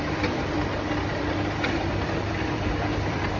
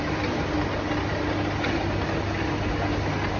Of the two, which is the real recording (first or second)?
second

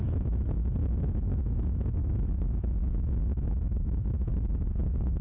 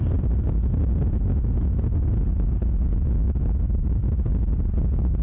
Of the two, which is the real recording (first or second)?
second